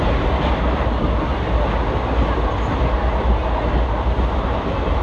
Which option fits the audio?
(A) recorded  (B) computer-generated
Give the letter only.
A